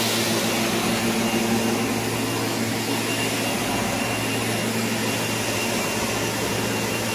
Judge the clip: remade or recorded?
recorded